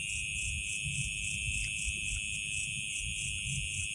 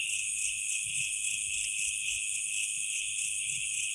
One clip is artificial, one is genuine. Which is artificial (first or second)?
second